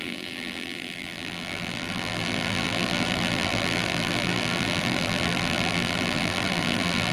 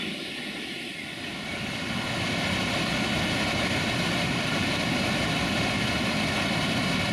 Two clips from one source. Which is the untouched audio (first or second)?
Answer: second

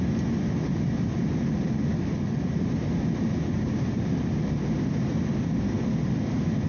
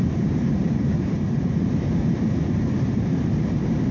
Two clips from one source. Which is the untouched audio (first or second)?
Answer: first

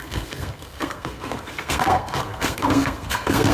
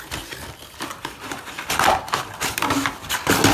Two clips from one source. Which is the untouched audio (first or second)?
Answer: second